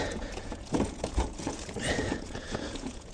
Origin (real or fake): fake